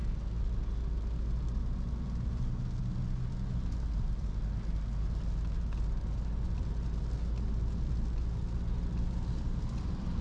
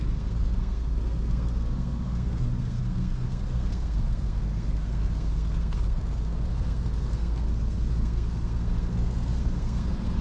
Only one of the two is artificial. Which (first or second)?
second